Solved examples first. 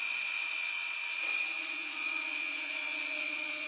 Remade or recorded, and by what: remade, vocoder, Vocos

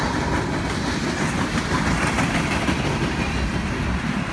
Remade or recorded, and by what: recorded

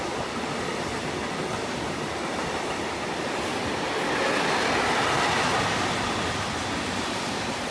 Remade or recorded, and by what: recorded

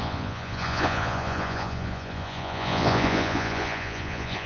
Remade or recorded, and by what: remade, vocoder, Vocos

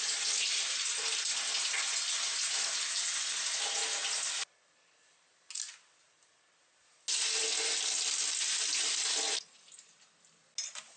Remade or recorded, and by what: recorded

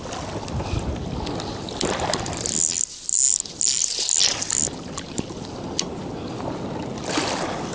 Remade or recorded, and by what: recorded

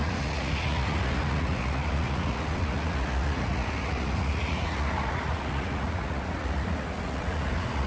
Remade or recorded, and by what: remade, vocoder, Vocos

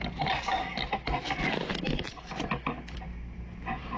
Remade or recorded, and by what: recorded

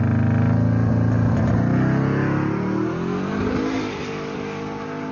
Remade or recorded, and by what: recorded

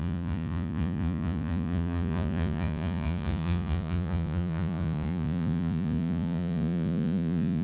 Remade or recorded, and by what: remade, vocoder, Vocos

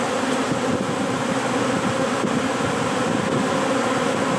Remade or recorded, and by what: recorded